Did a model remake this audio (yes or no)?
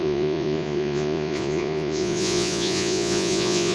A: yes